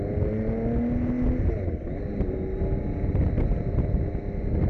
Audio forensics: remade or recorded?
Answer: recorded